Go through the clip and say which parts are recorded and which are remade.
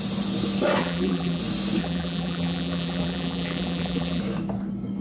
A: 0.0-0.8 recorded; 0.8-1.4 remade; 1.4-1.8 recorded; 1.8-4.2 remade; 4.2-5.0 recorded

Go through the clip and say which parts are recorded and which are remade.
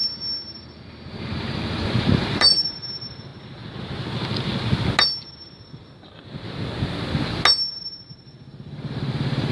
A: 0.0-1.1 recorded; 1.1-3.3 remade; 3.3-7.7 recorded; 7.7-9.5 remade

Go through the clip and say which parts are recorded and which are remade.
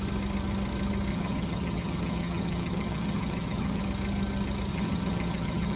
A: 0.0-1.1 recorded; 1.1-3.8 remade; 3.8-4.7 recorded; 4.7-5.8 remade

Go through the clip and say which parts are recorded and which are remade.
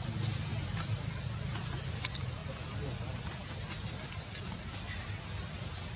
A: 0.0-6.0 recorded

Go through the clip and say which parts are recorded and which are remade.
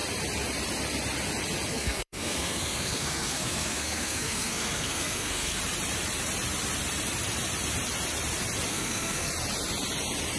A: 0.0-1.7 recorded; 1.7-5.6 remade; 5.6-8.7 recorded; 8.7-9.3 remade; 9.3-10.4 recorded